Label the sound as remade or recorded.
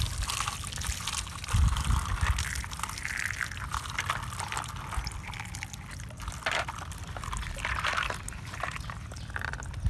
recorded